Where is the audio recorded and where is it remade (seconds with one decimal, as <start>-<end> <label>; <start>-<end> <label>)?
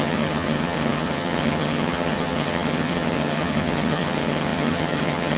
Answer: 0.0-5.4 remade